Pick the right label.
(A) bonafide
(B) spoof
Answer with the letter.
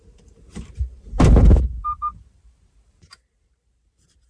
B